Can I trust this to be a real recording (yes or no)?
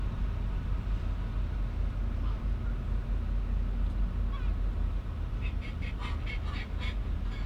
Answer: yes